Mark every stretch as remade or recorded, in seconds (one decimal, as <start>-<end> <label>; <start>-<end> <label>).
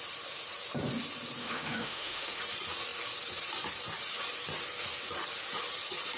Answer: 0.0-1.4 recorded; 1.4-2.4 remade; 2.4-6.2 recorded